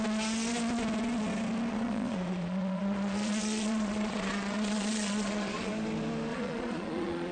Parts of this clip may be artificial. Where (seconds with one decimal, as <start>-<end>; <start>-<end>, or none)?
1.7-5.7; 6.3-7.3